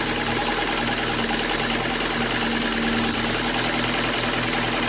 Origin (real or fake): real